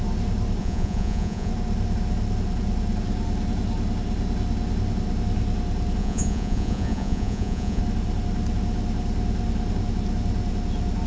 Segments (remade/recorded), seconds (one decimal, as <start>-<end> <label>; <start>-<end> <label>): 0.0-0.6 recorded; 0.6-1.5 remade; 1.5-6.0 recorded; 6.0-7.8 remade; 7.8-11.1 recorded